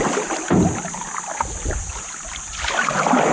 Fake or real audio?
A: real